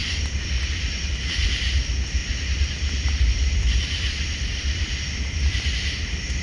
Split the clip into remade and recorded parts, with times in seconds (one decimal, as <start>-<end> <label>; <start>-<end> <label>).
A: 0.0-2.2 recorded; 2.2-6.0 remade; 6.0-6.4 recorded